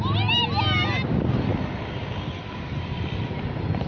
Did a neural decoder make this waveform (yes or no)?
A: no